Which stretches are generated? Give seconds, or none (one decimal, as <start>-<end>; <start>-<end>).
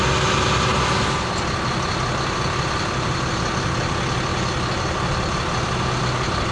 none